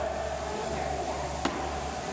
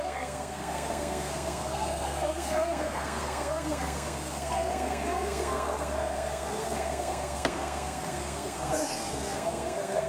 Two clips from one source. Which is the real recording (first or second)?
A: first